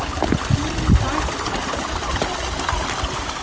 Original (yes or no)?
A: yes